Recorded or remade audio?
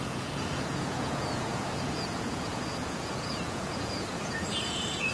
remade